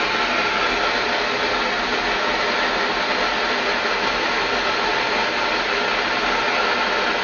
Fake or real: real